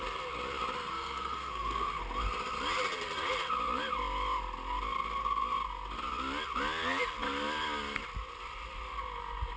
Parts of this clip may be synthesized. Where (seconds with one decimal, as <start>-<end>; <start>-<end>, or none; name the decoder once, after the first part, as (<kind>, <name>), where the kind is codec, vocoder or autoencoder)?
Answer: 0.9-2.0 (codec, SNAC)